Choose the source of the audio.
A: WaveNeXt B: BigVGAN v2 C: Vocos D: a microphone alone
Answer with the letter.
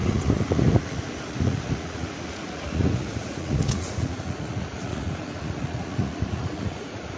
C